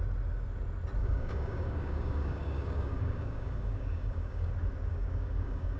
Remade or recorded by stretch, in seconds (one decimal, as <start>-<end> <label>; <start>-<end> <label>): 0.0-1.0 recorded; 1.0-4.5 remade; 4.5-4.9 recorded; 4.9-5.8 remade

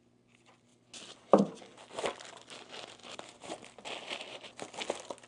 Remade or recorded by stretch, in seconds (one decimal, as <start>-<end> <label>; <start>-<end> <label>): 0.0-5.3 recorded

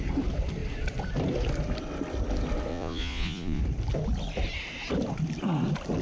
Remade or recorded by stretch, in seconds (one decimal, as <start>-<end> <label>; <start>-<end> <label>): 0.0-2.7 recorded; 2.7-3.6 remade; 3.6-6.0 recorded